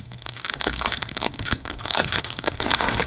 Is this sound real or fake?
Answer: fake